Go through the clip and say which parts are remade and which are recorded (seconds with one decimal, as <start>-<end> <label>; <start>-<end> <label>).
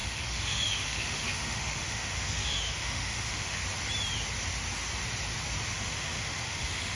0.0-3.6 remade; 3.6-5.7 recorded; 5.7-7.0 remade